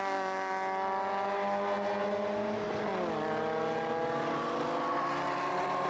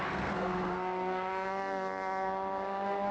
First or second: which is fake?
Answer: second